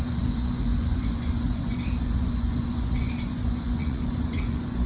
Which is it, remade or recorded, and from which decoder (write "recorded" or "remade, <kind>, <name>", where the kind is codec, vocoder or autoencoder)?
remade, vocoder, Vocos